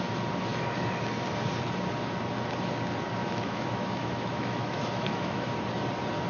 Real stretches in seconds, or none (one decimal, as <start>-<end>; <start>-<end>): 0.0-3.2; 5.5-6.3